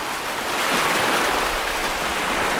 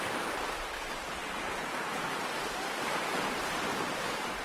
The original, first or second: first